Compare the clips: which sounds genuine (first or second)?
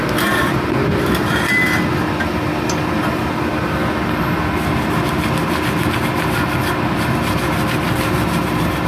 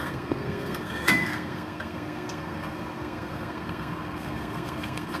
first